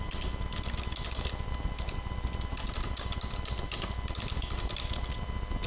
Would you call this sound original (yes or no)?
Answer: yes